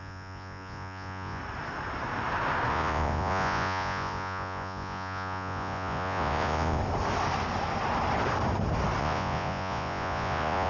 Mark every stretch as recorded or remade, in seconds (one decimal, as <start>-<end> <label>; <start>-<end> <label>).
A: 0.0-1.4 remade; 1.4-2.7 recorded; 2.7-6.8 remade; 6.8-9.0 recorded; 9.0-10.7 remade